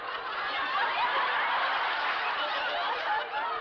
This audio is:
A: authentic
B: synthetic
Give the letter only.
A